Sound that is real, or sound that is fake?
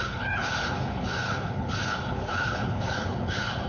fake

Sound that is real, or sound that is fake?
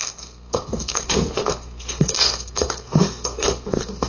fake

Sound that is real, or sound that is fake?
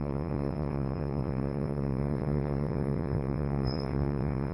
fake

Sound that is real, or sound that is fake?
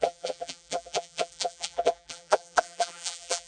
fake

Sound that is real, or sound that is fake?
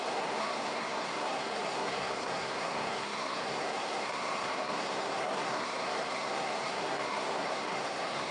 fake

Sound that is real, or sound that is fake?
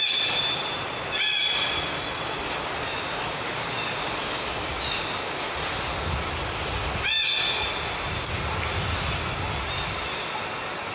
real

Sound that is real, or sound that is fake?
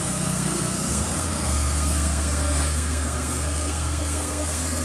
fake